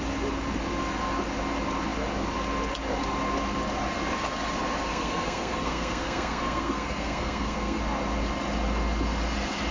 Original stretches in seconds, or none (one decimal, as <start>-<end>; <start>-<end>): 0.0-4.9; 7.8-9.7